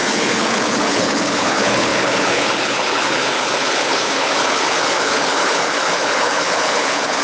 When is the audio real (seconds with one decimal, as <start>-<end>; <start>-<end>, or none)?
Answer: none